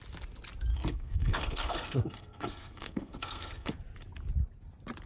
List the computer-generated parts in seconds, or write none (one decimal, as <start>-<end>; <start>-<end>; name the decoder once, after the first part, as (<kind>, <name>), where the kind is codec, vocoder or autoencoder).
0.7-3.7 (codec, SNAC)